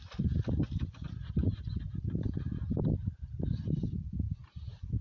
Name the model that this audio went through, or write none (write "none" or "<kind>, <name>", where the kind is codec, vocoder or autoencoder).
vocoder, BigVGAN v2